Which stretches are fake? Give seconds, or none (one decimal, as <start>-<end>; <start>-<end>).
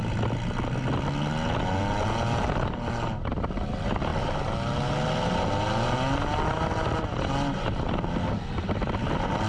none